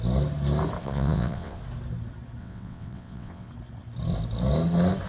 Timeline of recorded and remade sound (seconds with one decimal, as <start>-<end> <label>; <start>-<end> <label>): 0.0-0.8 recorded; 0.8-1.6 remade; 1.6-2.4 recorded; 2.4-3.5 remade; 3.5-5.1 recorded